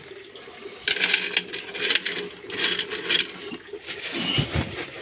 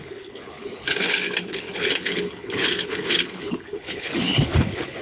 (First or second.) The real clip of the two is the first